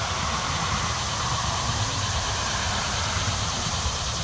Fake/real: fake